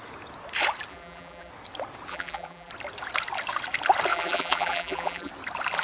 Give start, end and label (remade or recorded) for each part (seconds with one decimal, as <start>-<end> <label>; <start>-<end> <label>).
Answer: 0.0-0.9 recorded; 0.9-1.5 remade; 1.5-2.1 recorded; 2.1-2.7 remade; 2.7-4.1 recorded; 4.1-5.3 remade; 5.3-5.8 recorded